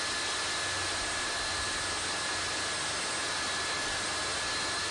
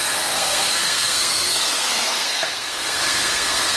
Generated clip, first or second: second